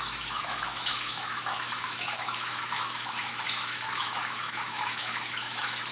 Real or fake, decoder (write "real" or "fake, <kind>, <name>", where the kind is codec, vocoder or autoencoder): fake, autoencoder, DAC-VAE